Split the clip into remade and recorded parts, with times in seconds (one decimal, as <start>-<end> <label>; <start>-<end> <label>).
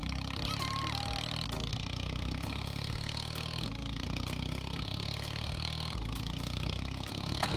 0.0-1.7 recorded; 1.7-7.6 remade